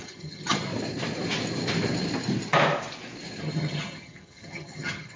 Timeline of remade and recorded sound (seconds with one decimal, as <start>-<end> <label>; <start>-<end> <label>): 0.0-0.7 remade; 0.7-3.4 recorded; 3.4-5.2 remade